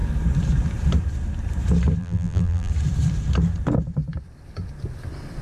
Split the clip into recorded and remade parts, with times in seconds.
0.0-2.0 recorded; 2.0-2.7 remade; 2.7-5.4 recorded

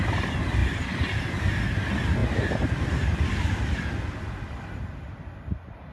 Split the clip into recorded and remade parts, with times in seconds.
0.0-0.6 recorded; 0.6-1.3 remade; 1.3-5.9 recorded